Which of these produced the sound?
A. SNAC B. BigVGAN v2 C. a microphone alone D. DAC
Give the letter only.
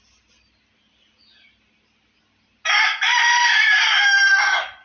C